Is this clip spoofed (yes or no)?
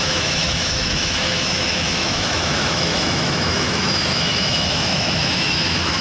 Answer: yes